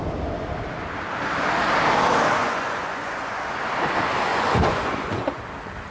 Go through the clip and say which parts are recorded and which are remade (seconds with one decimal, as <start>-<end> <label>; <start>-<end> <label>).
0.0-2.4 recorded; 2.4-3.6 remade; 3.6-4.3 recorded; 4.3-5.4 remade; 5.4-5.9 recorded

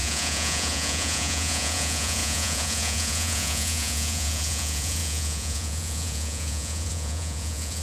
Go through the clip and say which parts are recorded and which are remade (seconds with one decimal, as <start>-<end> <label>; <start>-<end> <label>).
0.0-7.8 remade

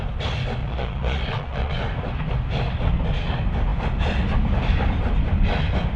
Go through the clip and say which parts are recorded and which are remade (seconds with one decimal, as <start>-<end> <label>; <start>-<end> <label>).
0.0-0.6 recorded; 0.6-1.8 remade; 1.8-6.0 recorded

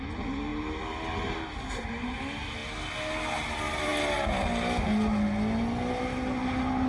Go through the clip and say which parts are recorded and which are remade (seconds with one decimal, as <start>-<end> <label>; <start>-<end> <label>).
0.0-6.9 recorded

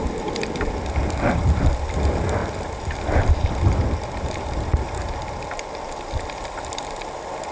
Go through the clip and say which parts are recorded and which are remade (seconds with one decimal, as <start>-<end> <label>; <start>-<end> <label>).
0.0-7.5 recorded

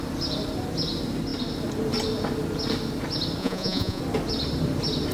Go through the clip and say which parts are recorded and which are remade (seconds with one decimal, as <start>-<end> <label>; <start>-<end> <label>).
0.0-3.4 recorded; 3.4-4.0 remade; 4.0-5.1 recorded

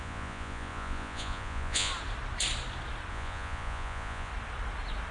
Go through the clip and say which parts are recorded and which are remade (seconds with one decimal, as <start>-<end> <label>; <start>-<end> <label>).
0.0-1.9 remade; 1.9-3.1 recorded; 3.1-4.3 remade; 4.3-5.1 recorded